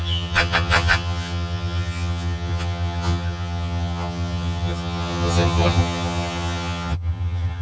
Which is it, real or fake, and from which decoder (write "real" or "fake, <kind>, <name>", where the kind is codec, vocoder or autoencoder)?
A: fake, vocoder, HiFi-GAN